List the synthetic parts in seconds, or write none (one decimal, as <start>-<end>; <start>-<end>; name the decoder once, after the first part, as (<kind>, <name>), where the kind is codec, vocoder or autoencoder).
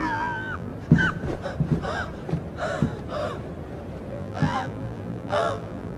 0.0-0.7 (vocoder, BigVGAN v2); 4.1-6.0